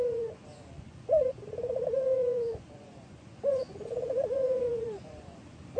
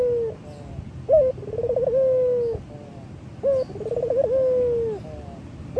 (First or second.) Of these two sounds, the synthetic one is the first